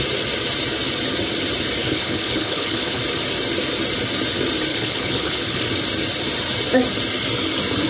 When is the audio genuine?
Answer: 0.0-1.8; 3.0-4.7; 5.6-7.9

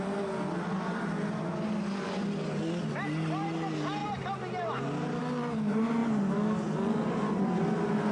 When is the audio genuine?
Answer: 0.0-8.1